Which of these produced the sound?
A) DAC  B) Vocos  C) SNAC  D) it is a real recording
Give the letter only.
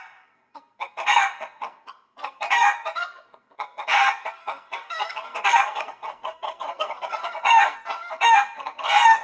C